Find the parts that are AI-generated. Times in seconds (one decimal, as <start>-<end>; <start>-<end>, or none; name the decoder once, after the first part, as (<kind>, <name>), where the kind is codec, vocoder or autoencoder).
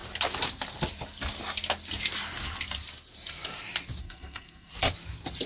4.0-4.7 (codec, SNAC)